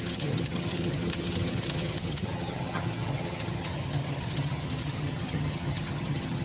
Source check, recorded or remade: remade